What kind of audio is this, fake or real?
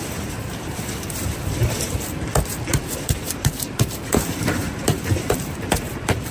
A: fake